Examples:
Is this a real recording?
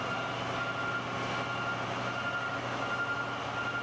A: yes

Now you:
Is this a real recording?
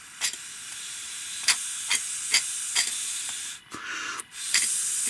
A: yes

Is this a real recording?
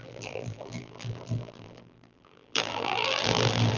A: no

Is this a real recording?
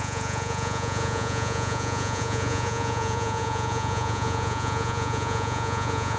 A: no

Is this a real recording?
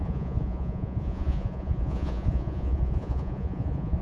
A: no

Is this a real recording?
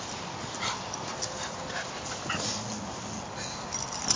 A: yes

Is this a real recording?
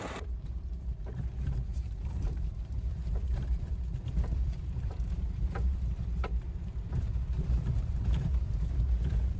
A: no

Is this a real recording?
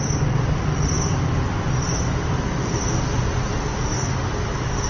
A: yes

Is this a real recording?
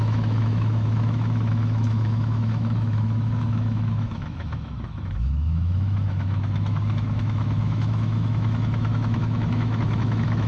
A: no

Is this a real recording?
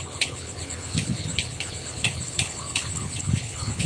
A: no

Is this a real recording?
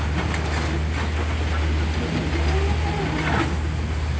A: yes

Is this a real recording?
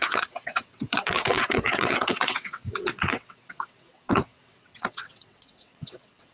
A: no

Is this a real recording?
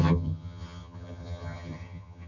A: no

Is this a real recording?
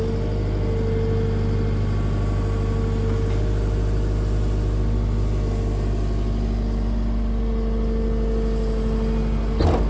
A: yes